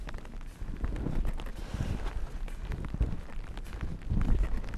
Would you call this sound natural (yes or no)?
yes